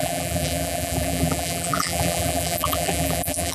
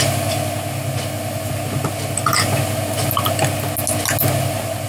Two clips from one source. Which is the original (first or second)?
second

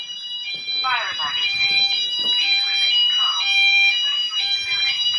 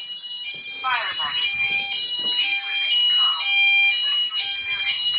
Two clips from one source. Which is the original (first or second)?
second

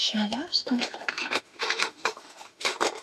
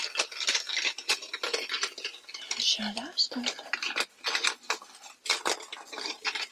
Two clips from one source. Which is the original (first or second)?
second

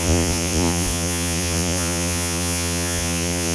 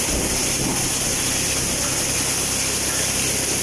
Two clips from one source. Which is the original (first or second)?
second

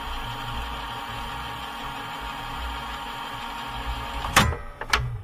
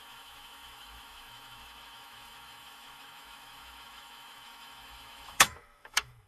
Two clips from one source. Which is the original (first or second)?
first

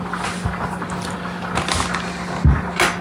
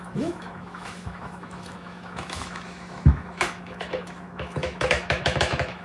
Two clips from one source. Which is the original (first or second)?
first